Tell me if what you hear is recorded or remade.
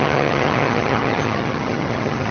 remade